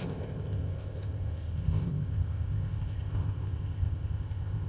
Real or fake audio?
fake